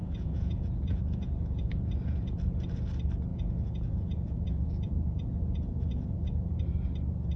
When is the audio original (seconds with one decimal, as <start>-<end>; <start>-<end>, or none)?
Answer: 1.9-3.3; 6.4-7.4